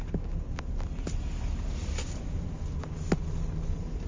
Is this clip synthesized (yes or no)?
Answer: no